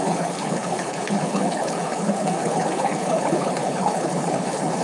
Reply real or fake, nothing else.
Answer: fake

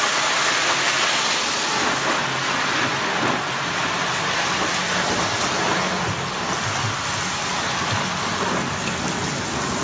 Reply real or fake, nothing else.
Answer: real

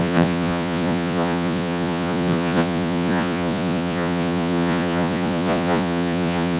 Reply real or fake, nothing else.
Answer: fake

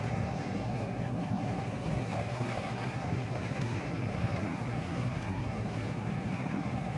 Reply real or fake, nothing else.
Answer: fake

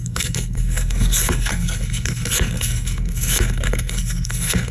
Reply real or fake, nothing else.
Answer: fake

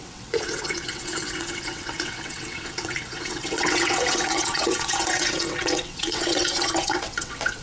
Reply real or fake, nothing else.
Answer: fake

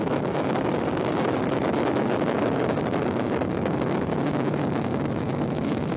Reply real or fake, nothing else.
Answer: fake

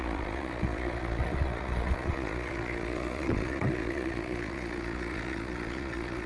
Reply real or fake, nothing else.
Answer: fake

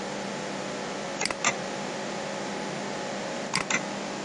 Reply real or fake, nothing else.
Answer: real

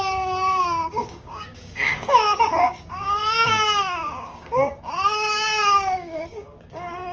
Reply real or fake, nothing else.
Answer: fake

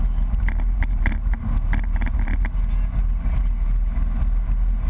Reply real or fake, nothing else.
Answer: real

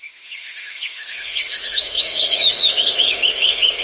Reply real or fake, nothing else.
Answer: fake